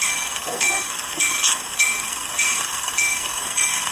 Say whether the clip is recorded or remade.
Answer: remade